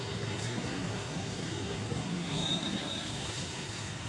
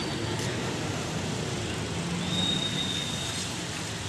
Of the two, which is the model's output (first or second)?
first